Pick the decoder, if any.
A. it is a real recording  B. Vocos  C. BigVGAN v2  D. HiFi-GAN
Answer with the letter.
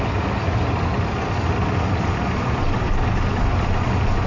A